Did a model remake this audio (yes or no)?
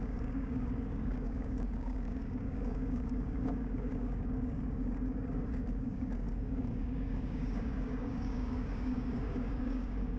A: yes